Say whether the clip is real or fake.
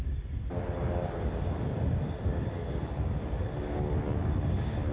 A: real